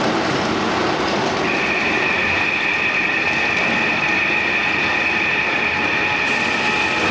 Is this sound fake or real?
real